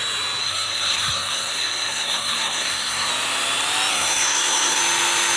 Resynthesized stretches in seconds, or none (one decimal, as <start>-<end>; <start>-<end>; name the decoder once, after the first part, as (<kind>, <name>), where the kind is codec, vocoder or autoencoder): 0.4-3.1 (codec, SNAC); 3.9-4.8